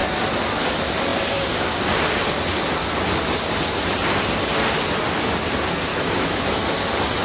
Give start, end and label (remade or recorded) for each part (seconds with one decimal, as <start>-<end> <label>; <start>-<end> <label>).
0.0-5.9 recorded; 5.9-6.6 remade; 6.6-7.2 recorded